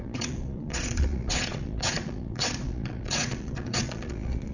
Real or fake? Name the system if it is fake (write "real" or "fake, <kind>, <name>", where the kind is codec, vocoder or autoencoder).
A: fake, vocoder, Vocos